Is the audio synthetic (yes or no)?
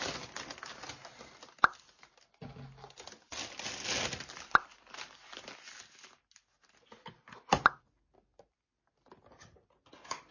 no